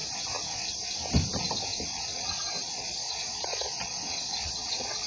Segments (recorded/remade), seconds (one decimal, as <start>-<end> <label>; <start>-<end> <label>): 0.0-1.9 recorded; 1.9-5.1 remade